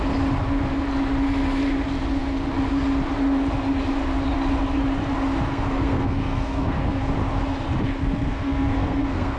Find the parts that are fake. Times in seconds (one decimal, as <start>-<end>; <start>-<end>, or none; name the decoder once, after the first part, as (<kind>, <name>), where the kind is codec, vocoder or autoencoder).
5.5-7.0 (codec, SNAC); 8.0-9.4